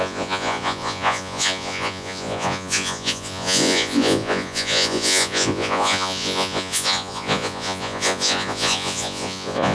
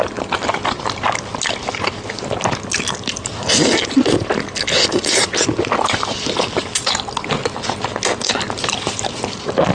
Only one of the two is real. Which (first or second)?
second